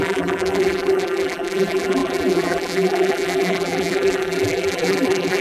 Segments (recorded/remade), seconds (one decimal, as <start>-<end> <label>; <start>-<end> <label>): 0.0-5.4 remade